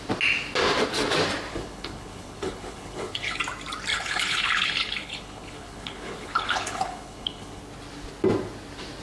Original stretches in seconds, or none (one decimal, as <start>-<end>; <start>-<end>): 0.0-1.5; 3.4-3.9; 7.6-9.0